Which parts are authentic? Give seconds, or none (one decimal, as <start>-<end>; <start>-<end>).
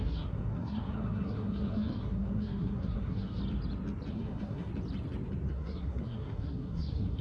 3.4-4.1; 4.7-5.5